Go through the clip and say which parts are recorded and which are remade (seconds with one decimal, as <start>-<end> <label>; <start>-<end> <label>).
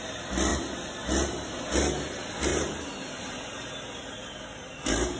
0.0-5.2 recorded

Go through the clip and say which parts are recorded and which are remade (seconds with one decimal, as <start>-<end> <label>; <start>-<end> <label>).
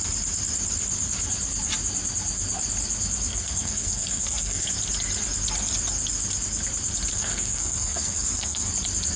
0.0-3.3 recorded; 3.3-4.7 remade; 4.7-7.1 recorded; 7.1-8.7 remade; 8.7-9.2 recorded